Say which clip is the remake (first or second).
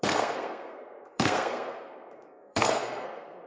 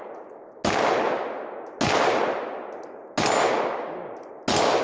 first